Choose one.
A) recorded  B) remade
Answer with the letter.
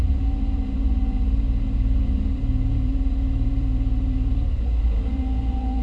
B